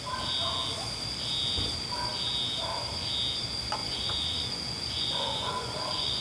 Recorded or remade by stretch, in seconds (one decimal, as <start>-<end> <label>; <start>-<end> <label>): 0.0-3.8 recorded; 3.8-6.2 remade